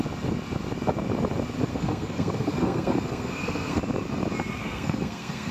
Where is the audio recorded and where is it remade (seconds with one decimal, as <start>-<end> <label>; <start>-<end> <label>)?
0.0-1.7 recorded; 1.7-3.8 remade; 3.8-4.6 recorded; 4.6-5.5 remade